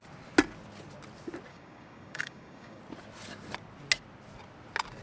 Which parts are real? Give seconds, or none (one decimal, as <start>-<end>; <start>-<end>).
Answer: 0.0-1.5; 2.8-5.0